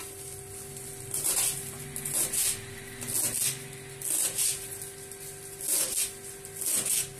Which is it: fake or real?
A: real